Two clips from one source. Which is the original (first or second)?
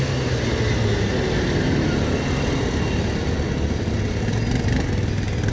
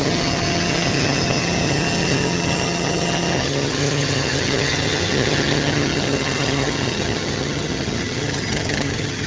first